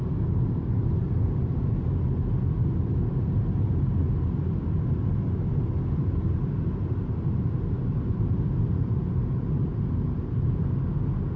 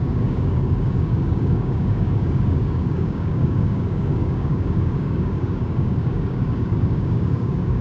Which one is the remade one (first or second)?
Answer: second